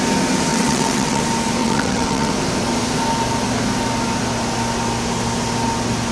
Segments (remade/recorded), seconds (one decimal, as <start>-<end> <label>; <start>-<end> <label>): 0.0-0.5 recorded; 0.5-1.2 remade; 1.2-1.6 recorded; 1.6-2.3 remade; 2.3-6.1 recorded